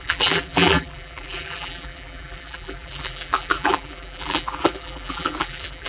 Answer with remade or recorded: remade